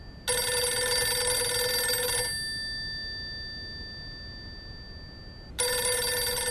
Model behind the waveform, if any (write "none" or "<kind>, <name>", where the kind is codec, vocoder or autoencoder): none